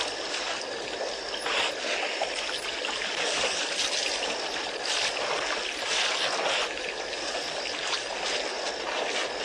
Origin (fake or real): real